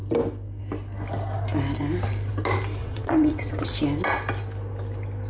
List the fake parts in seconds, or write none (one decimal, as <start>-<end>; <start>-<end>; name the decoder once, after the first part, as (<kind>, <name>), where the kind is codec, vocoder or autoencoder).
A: 2.8-3.7 (vocoder, WaveNeXt)